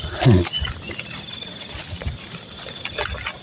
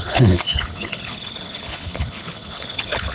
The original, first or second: first